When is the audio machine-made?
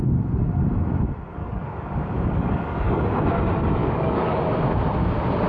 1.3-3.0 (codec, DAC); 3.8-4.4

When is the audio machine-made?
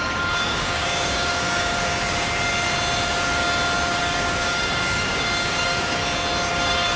0.0-2.5 (codec, DAC); 4.0-6.0; 6.5-7.0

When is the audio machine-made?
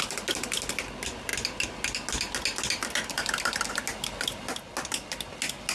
none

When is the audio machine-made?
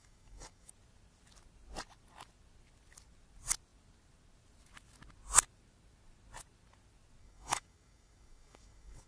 0.0-0.7 (codec, DAC); 7.2-9.1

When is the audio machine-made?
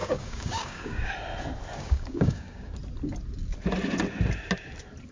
0.0-1.1 (codec, DAC); 1.7-2.7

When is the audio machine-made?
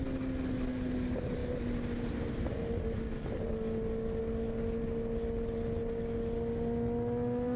none